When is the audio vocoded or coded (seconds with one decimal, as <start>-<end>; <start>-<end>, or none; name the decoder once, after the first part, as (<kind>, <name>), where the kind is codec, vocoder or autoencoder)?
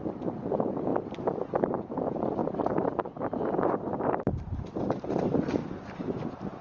0.0-0.9 (vocoder, BigVGAN v2); 1.5-6.6